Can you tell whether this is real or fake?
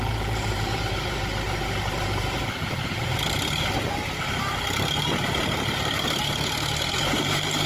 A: fake